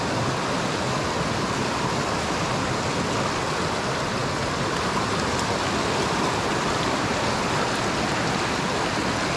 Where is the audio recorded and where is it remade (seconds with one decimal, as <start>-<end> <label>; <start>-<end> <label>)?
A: 0.0-9.4 recorded